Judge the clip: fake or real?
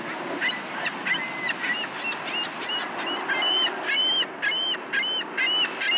real